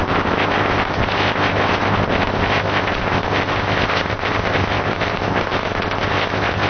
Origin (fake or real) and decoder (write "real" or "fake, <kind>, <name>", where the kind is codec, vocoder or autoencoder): fake, codec, ZipCodec